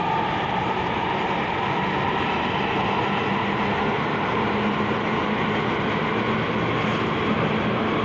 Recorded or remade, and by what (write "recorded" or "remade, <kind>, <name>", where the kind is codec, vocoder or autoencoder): recorded